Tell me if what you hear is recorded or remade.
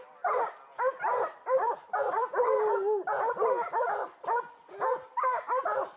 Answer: recorded